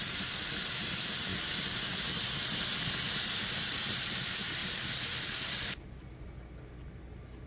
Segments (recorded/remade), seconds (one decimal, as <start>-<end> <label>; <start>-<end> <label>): 0.0-7.5 recorded

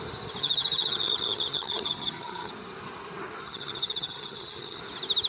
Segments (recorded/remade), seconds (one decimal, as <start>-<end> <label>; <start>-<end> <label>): 0.0-0.4 recorded; 0.4-2.5 remade; 2.5-3.4 recorded; 3.4-4.8 remade; 4.8-5.3 recorded

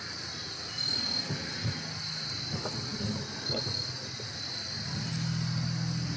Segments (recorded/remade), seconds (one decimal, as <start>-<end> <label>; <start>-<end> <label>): 0.0-6.2 recorded

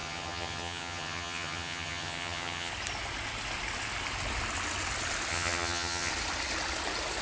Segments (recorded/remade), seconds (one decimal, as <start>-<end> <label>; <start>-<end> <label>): 0.0-2.7 remade; 2.7-5.3 recorded; 5.3-6.1 remade; 6.1-7.2 recorded

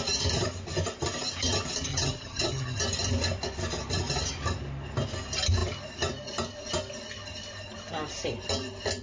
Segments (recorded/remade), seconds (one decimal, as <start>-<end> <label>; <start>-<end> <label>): 0.0-1.9 recorded; 1.9-2.8 remade; 2.8-9.0 recorded

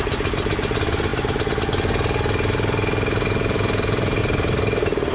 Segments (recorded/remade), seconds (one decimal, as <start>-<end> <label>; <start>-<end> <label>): 0.0-5.1 recorded